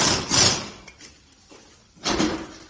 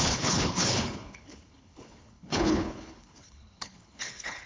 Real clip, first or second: first